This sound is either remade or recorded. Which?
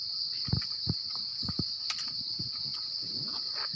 recorded